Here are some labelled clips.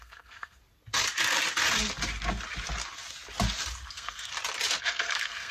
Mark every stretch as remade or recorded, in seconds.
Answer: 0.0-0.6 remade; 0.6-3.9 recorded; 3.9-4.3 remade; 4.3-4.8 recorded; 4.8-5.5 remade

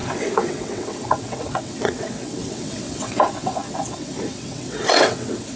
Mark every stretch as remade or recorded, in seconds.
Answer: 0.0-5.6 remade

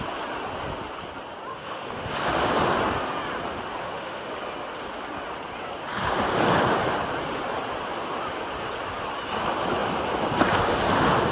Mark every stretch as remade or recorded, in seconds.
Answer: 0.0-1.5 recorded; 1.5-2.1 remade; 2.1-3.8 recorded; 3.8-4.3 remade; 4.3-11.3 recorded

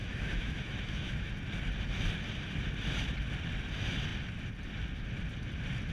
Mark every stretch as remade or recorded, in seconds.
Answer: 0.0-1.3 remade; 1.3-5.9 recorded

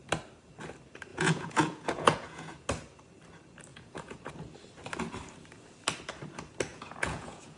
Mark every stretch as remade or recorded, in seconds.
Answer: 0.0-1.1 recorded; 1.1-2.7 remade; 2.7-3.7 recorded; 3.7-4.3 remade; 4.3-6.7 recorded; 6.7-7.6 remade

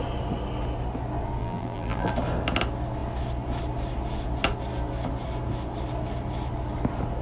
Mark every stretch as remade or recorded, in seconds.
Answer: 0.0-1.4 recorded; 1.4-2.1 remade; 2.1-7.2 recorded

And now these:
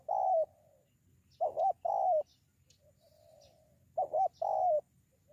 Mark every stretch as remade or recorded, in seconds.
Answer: 0.0-5.3 recorded